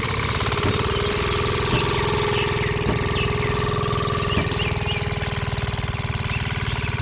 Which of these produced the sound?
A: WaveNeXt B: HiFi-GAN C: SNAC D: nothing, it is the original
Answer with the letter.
D